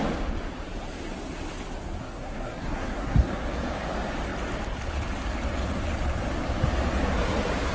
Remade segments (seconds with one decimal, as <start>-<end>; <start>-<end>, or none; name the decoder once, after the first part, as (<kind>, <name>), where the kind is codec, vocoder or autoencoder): 2.0-3.3 (codec, SNAC)

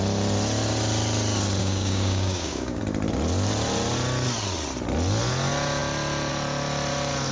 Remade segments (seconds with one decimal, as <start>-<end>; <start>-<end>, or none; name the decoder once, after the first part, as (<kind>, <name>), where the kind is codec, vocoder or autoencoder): 1.6-2.8 (codec, DAC)

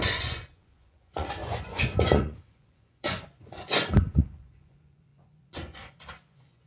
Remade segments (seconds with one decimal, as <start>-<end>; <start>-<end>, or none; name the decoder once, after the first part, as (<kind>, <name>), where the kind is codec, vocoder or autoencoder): 0.0-6.7 (vocoder, Vocos)